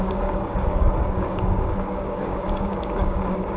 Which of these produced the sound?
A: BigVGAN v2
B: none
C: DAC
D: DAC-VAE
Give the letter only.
C